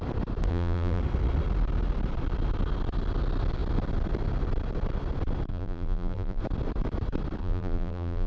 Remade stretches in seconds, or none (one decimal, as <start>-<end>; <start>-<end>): 0.5-1.0; 5.5-6.4; 7.4-8.3